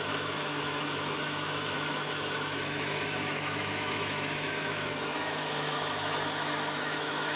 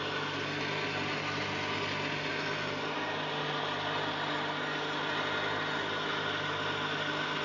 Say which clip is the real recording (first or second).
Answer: second